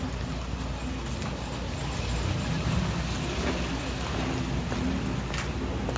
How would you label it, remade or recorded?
recorded